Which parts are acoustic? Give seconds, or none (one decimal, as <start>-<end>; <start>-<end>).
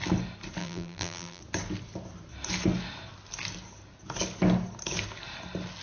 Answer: 0.0-0.6; 1.4-5.8